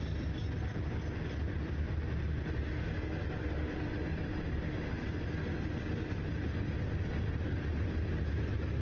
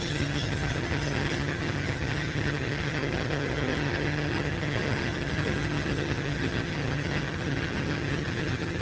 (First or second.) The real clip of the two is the first